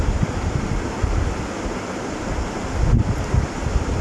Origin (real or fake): real